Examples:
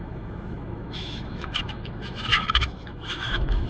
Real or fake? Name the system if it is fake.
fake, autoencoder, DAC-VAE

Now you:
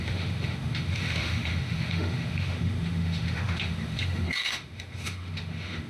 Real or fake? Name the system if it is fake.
fake, autoencoder, DAC-VAE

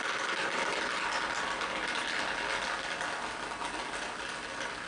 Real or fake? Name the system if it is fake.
real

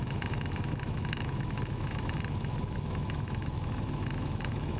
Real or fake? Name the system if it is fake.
fake, autoencoder, DAC-VAE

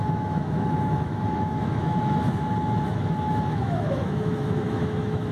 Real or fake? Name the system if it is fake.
fake, autoencoder, DAC-VAE